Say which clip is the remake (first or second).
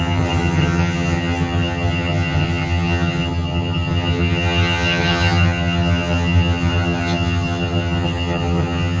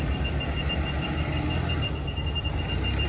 first